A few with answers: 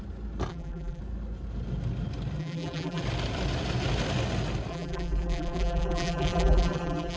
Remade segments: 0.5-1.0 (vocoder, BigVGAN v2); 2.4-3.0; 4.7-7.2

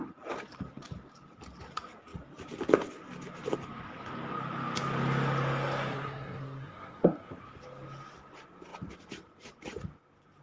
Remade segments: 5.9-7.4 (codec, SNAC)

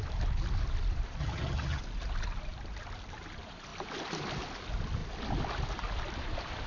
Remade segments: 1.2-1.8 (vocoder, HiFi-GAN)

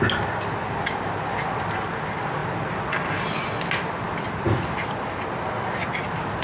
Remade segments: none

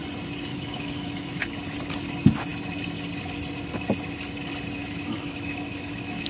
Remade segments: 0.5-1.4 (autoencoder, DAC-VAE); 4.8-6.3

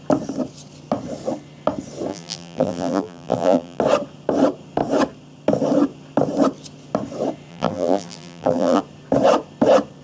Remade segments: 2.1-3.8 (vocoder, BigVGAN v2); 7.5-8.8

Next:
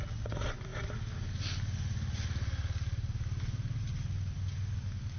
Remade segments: none